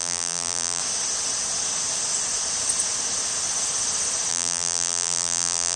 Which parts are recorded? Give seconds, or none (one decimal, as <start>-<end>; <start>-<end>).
0.8-4.3